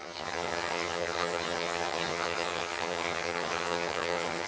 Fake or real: fake